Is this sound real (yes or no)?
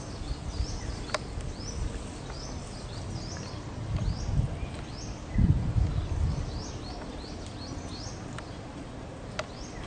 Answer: yes